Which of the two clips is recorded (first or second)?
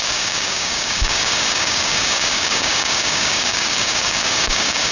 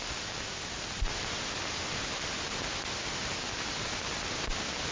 second